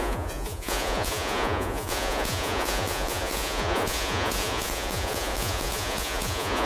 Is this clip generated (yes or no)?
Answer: yes